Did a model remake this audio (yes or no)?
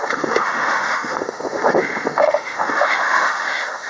yes